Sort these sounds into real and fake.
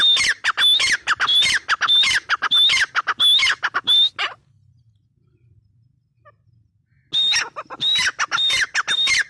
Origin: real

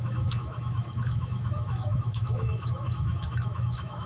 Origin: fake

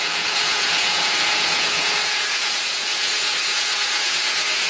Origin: fake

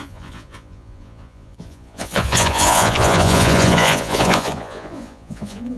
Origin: fake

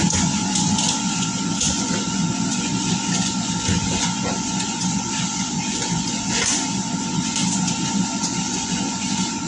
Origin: fake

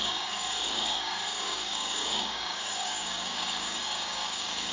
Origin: fake